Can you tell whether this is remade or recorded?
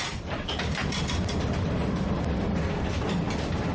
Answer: recorded